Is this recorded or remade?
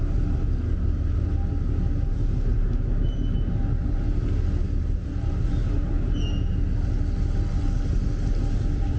recorded